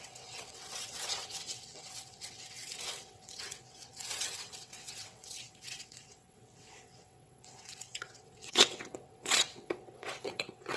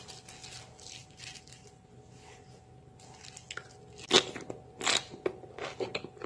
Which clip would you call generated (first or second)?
first